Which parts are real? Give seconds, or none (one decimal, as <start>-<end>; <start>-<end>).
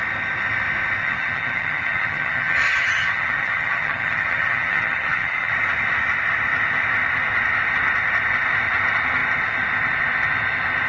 0.0-1.0; 5.5-10.9